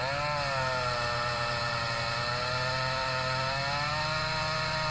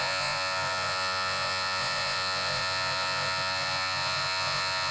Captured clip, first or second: first